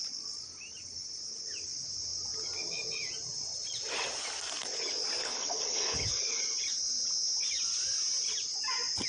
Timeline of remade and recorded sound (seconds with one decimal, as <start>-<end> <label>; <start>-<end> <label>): 0.0-5.2 recorded; 5.2-6.4 remade; 6.4-9.1 recorded